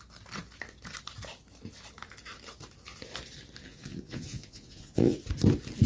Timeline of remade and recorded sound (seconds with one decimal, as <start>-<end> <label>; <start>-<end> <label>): 0.0-3.7 recorded; 3.7-5.2 remade; 5.2-5.9 recorded

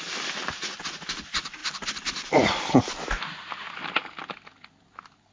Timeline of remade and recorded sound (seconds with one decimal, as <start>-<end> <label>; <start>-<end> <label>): 0.0-5.3 recorded

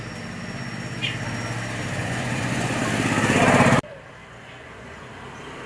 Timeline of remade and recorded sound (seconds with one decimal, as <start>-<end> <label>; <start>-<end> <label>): 0.0-2.0 recorded; 2.0-2.8 remade; 2.8-4.2 recorded; 4.2-5.1 remade; 5.1-5.7 recorded

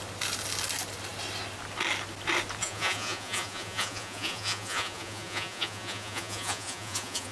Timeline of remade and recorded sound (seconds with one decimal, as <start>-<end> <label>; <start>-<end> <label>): 0.0-2.6 recorded; 2.6-7.3 remade

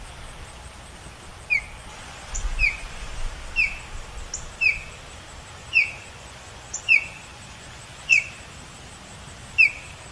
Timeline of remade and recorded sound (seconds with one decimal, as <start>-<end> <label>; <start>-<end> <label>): 0.0-1.9 recorded; 1.9-3.3 remade; 3.3-5.6 recorded; 5.6-8.3 remade; 8.3-10.1 recorded